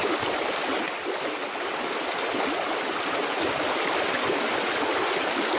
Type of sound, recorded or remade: recorded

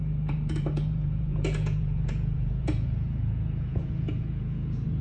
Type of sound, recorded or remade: remade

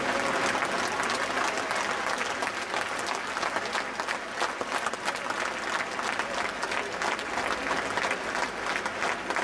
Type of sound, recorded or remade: recorded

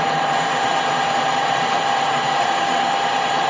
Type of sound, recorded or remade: remade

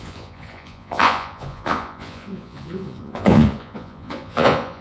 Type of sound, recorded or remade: remade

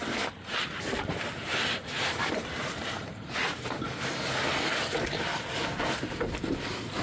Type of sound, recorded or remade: remade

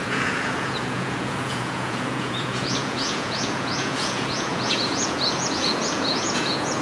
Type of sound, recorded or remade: remade